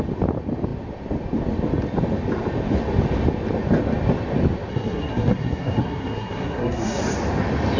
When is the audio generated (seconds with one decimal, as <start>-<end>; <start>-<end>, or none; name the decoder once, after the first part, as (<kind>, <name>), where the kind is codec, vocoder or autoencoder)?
4.7-7.0 (codec, SNAC)